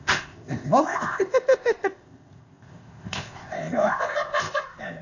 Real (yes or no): no